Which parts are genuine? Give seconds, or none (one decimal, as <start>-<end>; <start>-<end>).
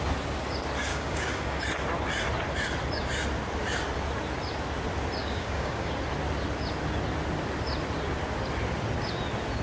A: 0.0-0.9; 1.6-5.2; 5.9-9.6